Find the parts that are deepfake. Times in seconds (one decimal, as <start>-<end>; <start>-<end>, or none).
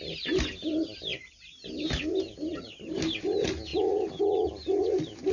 none